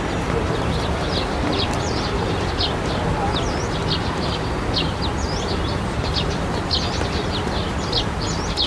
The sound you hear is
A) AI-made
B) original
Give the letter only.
B